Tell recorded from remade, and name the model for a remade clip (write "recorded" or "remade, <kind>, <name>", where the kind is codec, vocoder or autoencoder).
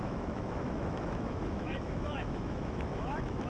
remade, autoencoder, DAC-VAE